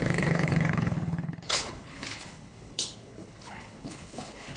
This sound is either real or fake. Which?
fake